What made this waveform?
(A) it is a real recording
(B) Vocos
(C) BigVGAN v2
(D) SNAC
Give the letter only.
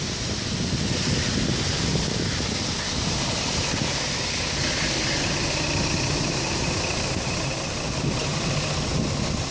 A